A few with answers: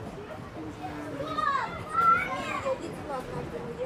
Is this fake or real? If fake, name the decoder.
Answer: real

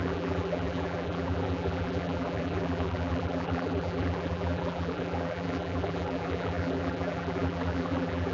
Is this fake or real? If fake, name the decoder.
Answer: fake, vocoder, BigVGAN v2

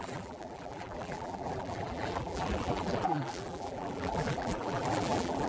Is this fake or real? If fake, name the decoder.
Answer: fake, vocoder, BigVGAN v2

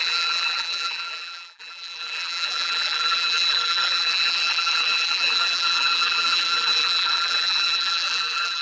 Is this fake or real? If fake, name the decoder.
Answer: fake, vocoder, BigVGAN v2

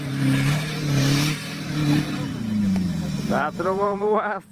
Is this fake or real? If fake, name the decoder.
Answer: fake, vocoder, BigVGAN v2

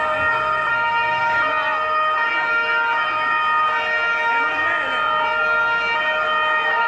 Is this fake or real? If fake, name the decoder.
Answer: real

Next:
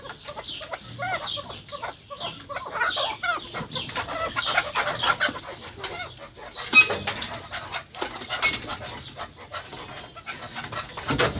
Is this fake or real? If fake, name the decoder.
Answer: real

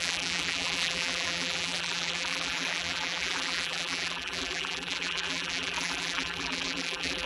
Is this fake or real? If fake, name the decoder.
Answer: fake, vocoder, BigVGAN v2